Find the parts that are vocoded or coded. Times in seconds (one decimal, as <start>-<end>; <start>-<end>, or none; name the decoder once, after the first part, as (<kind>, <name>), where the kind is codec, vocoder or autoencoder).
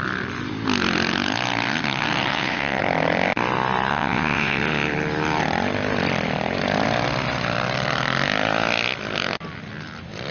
2.3-2.8 (vocoder, WaveNeXt); 3.9-4.6